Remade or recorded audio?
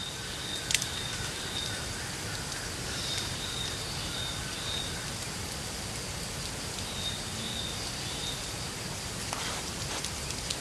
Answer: recorded